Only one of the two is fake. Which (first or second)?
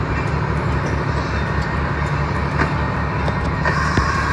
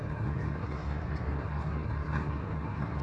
second